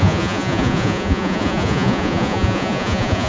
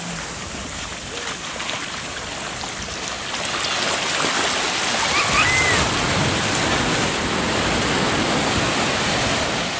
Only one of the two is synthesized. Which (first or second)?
first